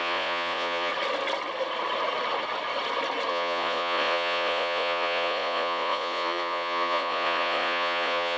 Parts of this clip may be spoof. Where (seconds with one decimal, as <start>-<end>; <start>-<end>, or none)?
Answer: 0.0-0.9; 3.3-8.4